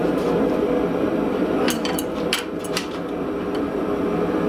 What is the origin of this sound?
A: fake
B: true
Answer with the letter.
A